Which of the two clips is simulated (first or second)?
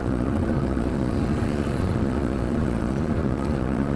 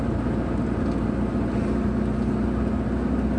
first